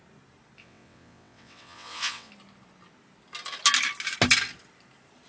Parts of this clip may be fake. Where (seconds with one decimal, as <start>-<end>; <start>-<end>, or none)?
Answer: 0.6-2.3

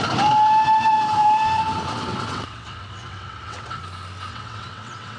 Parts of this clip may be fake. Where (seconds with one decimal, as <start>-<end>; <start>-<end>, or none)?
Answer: 2.1-3.8; 4.3-5.2

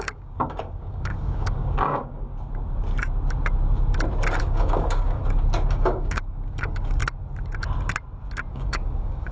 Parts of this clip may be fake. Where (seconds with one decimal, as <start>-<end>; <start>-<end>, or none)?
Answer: 0.0-2.3; 4.4-5.2; 5.7-7.0; 8.5-9.3

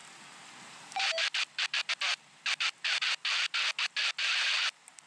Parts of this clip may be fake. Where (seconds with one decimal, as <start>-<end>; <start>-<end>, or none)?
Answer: 0.0-3.1

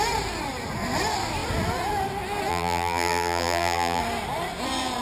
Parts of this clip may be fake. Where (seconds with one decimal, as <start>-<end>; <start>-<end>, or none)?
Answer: 2.5-4.0

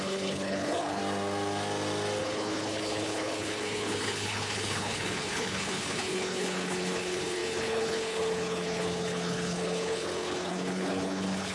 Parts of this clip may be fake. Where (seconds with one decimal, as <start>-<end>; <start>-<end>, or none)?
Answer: 0.0-1.0; 2.2-11.5

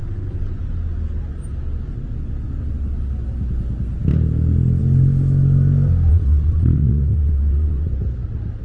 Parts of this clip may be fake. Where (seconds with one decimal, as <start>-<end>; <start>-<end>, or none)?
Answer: 6.1-7.9

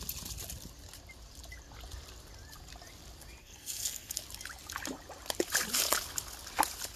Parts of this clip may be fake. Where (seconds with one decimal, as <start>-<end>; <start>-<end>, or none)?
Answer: 3.4-4.2